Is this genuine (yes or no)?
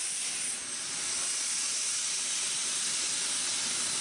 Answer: yes